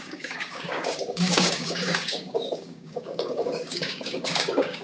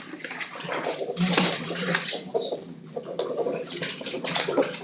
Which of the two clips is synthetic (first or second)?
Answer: first